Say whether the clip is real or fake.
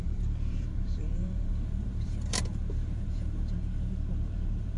fake